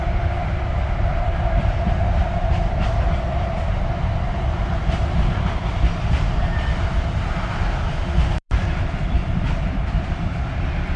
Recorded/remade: remade